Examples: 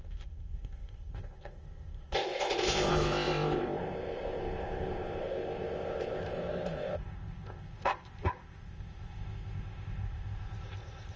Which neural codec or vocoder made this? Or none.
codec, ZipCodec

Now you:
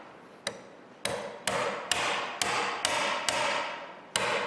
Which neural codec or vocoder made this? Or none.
none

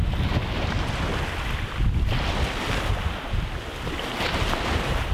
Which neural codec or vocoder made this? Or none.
none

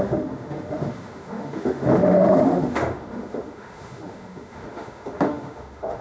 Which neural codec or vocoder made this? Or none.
autoencoder, DAC-VAE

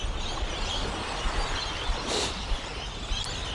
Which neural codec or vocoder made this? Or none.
none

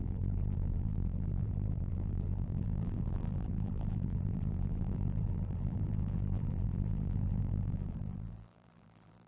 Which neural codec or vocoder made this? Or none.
vocoder, BigVGAN v2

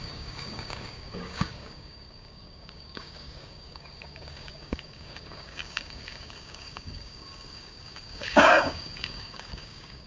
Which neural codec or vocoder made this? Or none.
codec, DAC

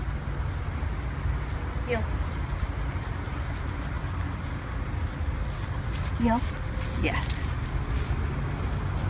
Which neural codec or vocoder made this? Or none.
none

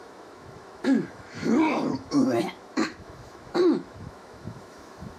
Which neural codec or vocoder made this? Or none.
autoencoder, DAC-VAE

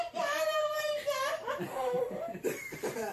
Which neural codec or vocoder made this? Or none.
vocoder, BigVGAN v2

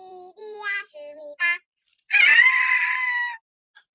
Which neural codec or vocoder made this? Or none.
none